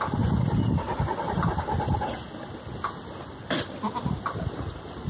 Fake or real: real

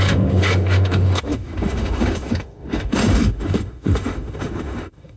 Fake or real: fake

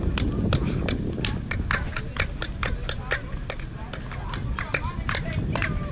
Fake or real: real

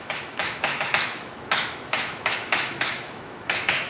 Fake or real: fake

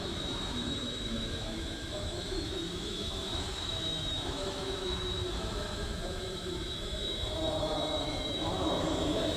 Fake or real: fake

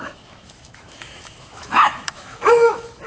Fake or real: fake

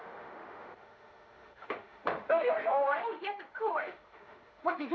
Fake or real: fake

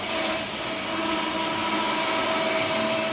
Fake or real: real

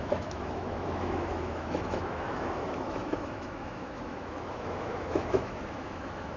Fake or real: fake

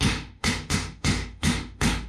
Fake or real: fake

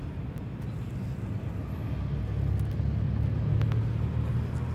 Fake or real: real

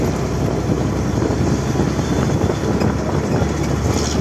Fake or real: real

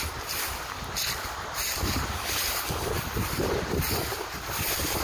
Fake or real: real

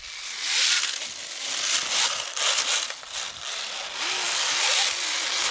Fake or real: real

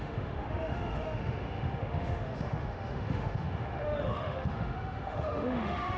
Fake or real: fake